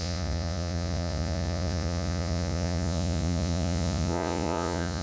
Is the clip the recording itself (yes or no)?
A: no